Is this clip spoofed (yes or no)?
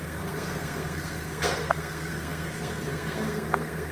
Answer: yes